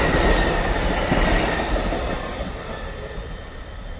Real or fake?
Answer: real